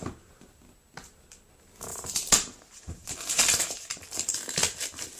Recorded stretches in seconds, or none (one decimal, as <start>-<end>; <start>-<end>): 0.0-1.9; 4.0-5.2